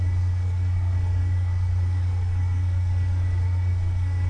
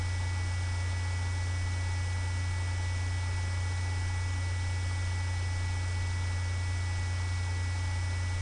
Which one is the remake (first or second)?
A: first